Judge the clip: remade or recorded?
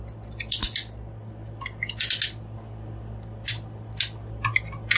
recorded